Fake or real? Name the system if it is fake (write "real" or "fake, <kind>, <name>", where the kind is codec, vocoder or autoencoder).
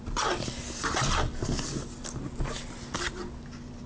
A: real